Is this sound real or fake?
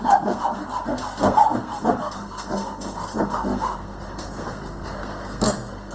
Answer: fake